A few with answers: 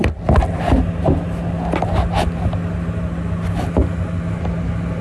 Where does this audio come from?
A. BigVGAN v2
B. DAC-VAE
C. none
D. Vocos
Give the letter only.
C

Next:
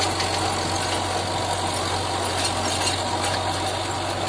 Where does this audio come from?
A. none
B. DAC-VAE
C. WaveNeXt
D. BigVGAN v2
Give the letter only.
A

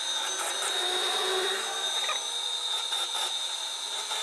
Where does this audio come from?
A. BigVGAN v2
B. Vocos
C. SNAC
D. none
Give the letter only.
A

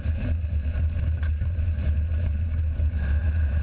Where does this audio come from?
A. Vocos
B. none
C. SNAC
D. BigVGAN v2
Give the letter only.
D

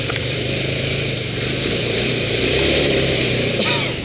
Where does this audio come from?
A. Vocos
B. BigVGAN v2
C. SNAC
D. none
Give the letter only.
B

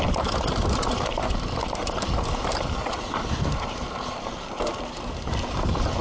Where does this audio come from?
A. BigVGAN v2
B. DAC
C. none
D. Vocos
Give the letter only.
A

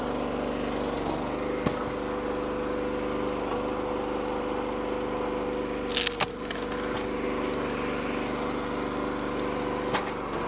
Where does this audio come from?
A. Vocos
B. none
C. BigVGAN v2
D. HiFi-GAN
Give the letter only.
B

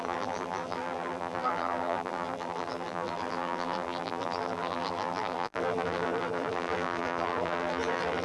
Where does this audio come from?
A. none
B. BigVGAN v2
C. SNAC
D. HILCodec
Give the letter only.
B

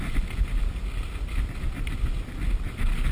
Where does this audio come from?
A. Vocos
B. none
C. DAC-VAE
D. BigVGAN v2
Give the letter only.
B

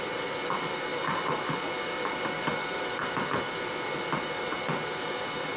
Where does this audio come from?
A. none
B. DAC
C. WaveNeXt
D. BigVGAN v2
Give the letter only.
A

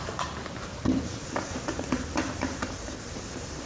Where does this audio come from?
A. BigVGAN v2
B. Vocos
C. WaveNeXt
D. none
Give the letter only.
A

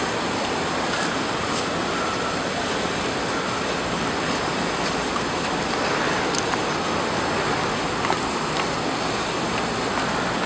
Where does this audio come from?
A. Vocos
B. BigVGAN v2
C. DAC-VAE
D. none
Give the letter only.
B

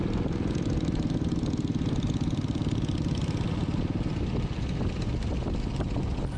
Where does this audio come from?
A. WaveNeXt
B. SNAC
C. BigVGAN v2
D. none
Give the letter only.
D